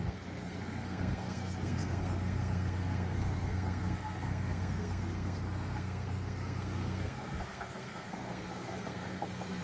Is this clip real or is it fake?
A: fake